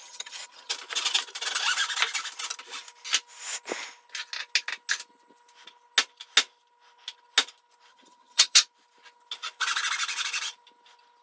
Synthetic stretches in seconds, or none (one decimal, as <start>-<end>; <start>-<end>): 0.0-0.7; 7.9-8.6